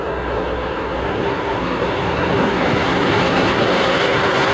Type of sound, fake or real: fake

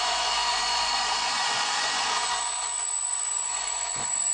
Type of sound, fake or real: fake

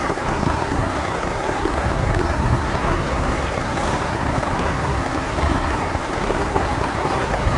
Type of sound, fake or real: fake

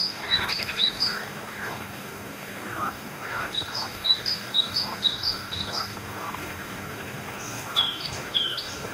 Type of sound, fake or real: fake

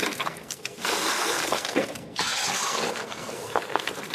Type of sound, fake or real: fake